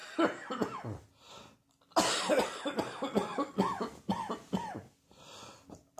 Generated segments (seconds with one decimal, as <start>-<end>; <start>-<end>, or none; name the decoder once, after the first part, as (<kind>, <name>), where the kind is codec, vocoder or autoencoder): none